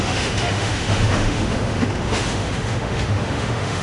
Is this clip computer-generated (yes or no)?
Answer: yes